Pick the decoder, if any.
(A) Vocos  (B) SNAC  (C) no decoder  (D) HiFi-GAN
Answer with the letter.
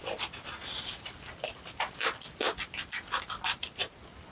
C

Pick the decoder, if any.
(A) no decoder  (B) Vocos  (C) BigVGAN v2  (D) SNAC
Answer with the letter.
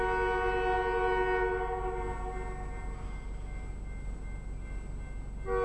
A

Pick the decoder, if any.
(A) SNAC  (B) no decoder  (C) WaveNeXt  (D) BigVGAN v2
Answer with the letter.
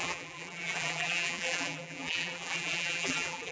D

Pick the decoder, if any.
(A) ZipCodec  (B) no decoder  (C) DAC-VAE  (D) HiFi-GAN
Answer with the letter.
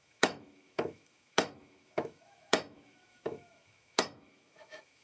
C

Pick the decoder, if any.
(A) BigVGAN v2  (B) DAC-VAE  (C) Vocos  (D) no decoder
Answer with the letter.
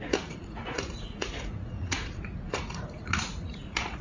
C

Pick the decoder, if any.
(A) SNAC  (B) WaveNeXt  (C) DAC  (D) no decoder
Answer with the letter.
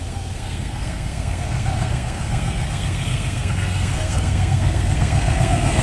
A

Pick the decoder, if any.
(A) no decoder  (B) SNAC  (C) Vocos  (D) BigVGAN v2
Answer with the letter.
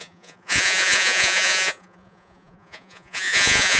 C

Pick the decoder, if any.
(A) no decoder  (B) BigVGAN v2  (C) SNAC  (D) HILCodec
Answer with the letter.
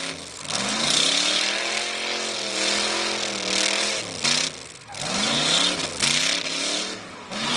A